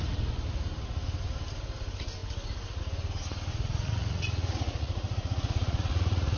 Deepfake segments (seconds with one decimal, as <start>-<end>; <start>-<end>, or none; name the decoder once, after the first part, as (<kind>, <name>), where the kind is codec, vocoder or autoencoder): 3.5-6.4 (vocoder, Vocos)